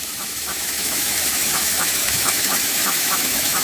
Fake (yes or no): yes